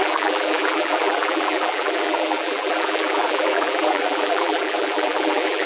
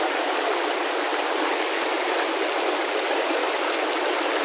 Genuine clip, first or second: second